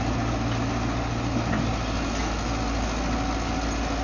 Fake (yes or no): no